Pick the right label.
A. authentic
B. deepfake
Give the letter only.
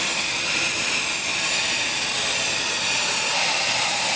A